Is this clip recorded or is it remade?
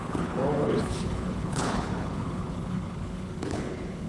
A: remade